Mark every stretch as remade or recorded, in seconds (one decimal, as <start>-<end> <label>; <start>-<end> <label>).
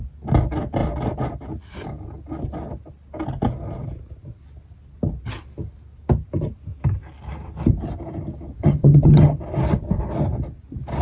0.0-8.6 recorded; 8.6-9.4 remade; 9.4-11.0 recorded